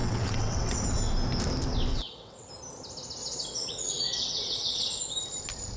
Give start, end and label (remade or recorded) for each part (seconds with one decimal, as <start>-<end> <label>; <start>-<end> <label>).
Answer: 0.0-0.8 remade; 0.8-1.9 recorded; 1.9-2.5 remade; 2.5-3.2 recorded; 3.2-5.0 remade; 5.0-5.8 recorded

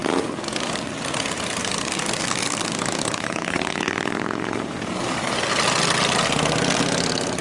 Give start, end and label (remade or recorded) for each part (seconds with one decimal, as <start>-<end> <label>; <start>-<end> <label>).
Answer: 0.0-0.8 remade; 0.8-1.6 recorded; 1.6-5.4 remade; 5.4-7.4 recorded